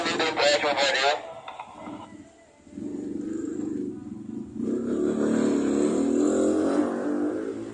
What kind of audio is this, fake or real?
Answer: real